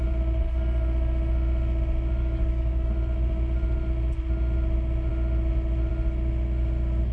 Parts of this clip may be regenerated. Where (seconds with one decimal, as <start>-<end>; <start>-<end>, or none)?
2.2-2.9